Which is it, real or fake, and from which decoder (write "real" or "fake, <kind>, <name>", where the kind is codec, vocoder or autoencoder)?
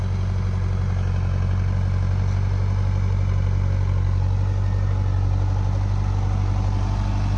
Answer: real